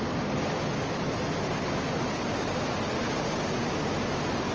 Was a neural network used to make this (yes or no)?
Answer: no